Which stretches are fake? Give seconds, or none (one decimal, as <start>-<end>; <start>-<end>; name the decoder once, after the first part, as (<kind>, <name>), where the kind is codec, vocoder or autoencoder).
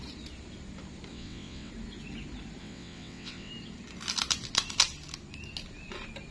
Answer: 1.1-1.7 (vocoder, WaveNeXt); 2.6-3.5